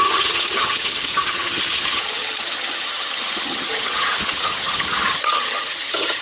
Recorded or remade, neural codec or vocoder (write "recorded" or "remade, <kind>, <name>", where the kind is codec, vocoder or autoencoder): remade, vocoder, HiFi-GAN